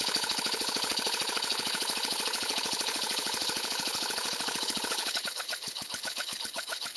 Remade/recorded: remade